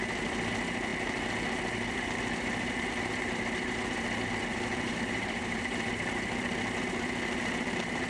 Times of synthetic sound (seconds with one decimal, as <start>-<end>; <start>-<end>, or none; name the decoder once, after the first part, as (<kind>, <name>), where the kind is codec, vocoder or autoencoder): 4.5-5.8 (vocoder, BigVGAN v2)